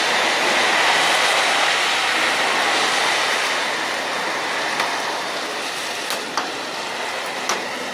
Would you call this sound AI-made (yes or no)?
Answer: no